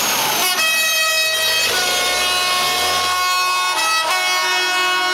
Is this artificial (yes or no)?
no